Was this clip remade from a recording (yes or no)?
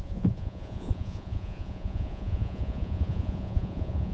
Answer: yes